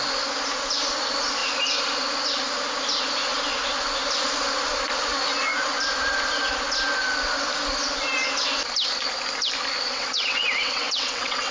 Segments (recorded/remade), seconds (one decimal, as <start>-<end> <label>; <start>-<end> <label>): 0.0-9.9 recorded; 9.9-11.5 remade